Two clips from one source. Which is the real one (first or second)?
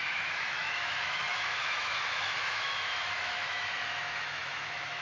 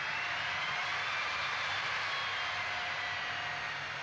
second